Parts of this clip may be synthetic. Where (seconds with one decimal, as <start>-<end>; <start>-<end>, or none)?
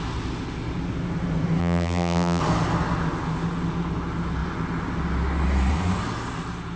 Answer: 1.6-2.4